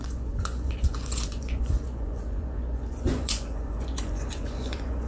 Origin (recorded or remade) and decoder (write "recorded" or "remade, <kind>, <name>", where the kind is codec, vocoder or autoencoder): remade, vocoder, Vocos